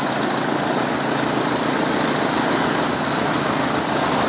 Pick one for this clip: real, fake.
real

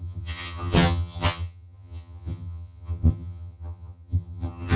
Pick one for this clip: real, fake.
fake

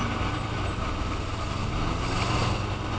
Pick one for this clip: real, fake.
real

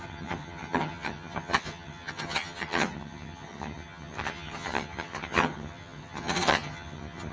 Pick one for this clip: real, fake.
fake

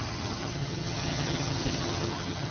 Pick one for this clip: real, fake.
fake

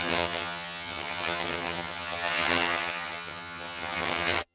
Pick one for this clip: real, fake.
fake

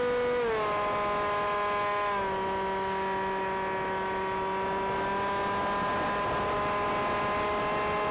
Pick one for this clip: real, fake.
real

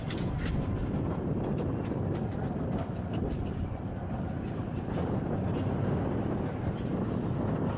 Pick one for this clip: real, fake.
real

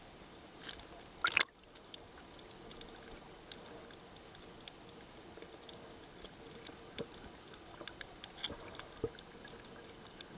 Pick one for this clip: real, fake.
real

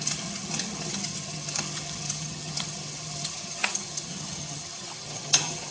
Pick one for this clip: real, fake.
fake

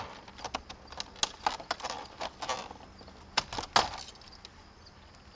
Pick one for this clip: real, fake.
real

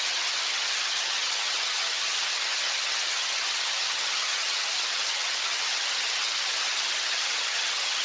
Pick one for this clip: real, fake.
fake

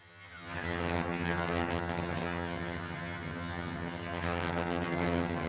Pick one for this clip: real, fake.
fake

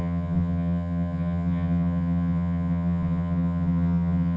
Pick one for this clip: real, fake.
fake